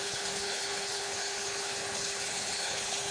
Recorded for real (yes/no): no